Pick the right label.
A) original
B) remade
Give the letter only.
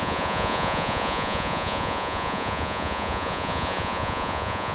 B